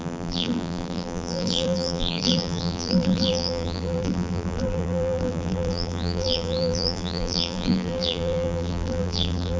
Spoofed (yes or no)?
yes